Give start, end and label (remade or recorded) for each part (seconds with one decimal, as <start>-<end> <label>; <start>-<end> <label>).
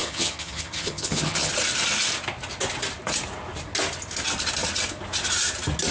0.0-1.5 remade; 1.5-5.9 recorded